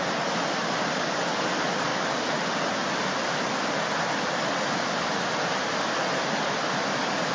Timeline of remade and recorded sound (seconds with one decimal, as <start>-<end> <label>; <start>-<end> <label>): 0.0-7.3 recorded